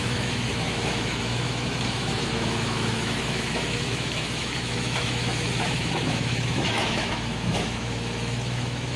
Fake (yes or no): yes